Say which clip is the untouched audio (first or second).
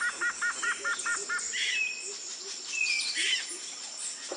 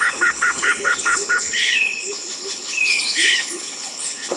first